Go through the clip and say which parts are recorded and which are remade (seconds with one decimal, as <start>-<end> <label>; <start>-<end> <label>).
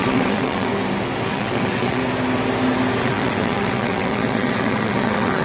0.0-0.7 remade; 0.7-1.3 recorded; 1.3-2.0 remade; 2.0-3.0 recorded; 3.0-5.4 remade